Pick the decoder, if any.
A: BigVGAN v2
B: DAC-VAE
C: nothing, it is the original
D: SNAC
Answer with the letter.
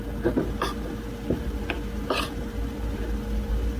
C